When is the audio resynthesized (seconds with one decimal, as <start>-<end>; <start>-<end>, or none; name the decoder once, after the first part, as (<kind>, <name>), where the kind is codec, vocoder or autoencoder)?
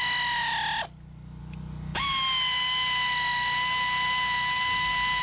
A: none